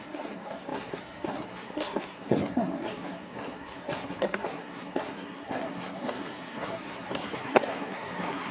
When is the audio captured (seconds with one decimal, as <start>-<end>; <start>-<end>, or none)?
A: none